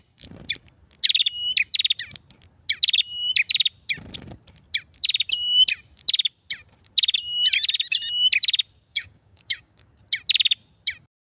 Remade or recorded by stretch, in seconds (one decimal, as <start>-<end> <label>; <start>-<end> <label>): 0.0-8.9 recorded; 8.9-10.0 remade; 10.0-11.4 recorded